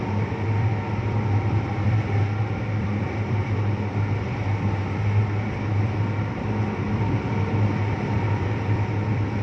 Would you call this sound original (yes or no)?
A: no